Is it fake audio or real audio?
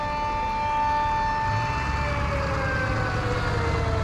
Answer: real